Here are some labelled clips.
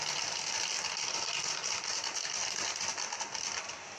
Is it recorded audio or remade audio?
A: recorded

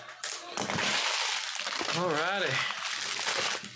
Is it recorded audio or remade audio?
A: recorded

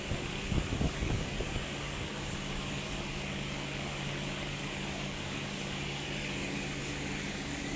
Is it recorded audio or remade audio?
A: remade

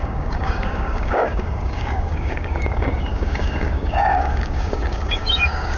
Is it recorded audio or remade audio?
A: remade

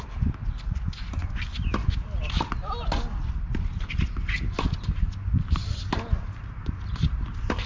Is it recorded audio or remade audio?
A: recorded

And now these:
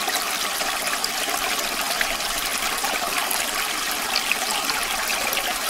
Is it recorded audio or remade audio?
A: recorded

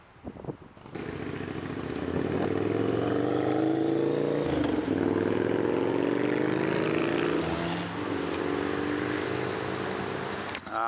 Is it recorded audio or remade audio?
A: recorded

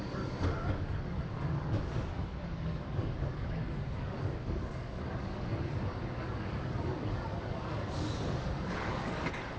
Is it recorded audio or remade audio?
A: remade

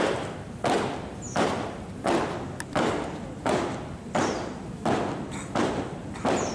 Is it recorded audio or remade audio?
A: recorded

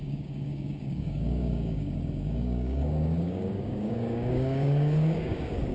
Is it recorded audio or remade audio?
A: remade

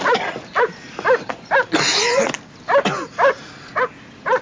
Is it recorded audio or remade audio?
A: recorded